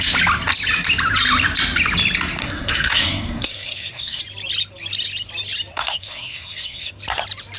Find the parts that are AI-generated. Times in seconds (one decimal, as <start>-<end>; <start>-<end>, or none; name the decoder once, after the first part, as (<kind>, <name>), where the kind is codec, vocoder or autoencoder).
2.4-4.2 (codec, SNAC); 5.7-6.9